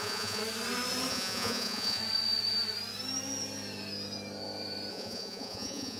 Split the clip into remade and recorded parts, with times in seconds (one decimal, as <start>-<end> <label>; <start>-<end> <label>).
0.0-0.4 remade; 0.4-1.1 recorded; 1.1-2.0 remade; 2.0-4.9 recorded; 4.9-6.0 remade